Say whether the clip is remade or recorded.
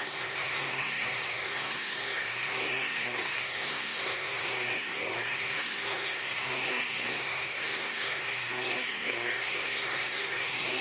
remade